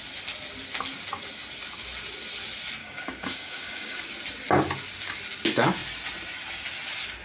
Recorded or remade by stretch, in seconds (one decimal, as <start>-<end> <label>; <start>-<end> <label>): 0.0-2.8 recorded; 2.8-4.0 remade; 4.0-7.2 recorded

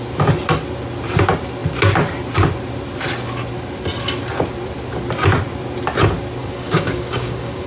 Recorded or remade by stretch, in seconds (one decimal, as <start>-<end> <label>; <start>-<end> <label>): 0.0-6.4 recorded; 6.4-7.7 remade

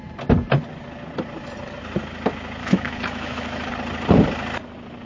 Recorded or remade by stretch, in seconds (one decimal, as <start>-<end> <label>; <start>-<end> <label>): 0.0-2.6 recorded; 2.6-3.7 remade; 3.7-5.1 recorded